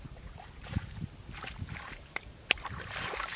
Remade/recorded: remade